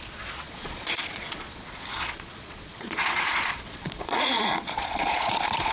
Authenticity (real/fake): fake